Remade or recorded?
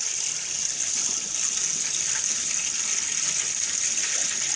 recorded